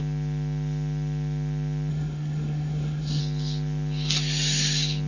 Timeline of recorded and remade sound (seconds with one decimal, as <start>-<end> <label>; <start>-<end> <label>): 0.0-1.9 recorded; 1.9-3.2 remade; 3.2-5.1 recorded